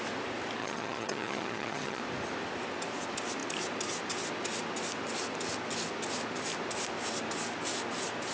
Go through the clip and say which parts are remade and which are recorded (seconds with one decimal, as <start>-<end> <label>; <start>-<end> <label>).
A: 0.0-0.6 recorded; 0.6-2.0 remade; 2.0-8.3 recorded

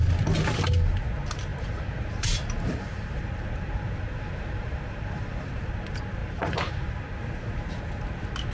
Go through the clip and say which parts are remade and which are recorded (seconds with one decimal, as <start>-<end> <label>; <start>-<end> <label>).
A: 0.0-1.5 recorded; 1.5-5.7 remade; 5.7-6.2 recorded; 6.2-6.7 remade; 6.7-8.5 recorded

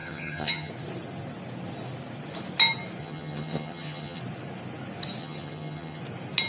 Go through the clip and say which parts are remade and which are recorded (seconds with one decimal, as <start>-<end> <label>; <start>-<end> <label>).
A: 0.0-0.7 remade; 0.7-3.0 recorded; 3.0-4.2 remade; 4.2-5.2 recorded; 5.2-6.0 remade; 6.0-6.5 recorded

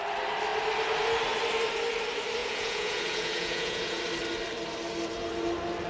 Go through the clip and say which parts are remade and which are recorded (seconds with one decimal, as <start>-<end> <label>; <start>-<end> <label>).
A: 0.0-2.4 recorded; 2.4-4.0 remade; 4.0-5.9 recorded